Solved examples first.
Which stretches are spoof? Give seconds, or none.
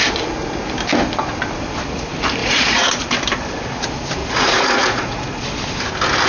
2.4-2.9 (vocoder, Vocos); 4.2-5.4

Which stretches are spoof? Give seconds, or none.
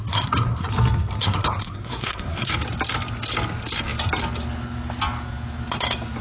0.0-0.7 (codec, SNAC); 1.2-2.5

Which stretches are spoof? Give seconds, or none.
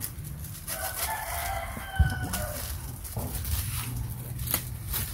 none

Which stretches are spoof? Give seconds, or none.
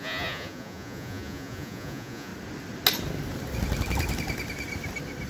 0.0-2.3 (vocoder, Vocos)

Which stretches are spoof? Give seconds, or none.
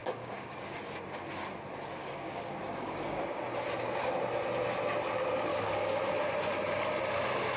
0.0-0.8 (codec, DAC); 2.0-3.2; 5.5-6.0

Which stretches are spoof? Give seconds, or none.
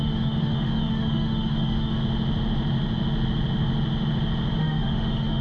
0.0-2.0 (autoencoder, DAC-VAE); 4.6-5.4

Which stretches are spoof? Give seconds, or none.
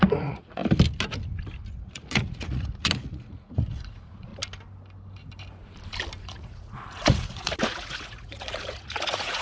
0.0-0.6 (vocoder, Vocos); 1.8-4.3; 6.2-9.4